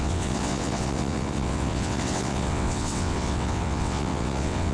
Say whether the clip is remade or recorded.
remade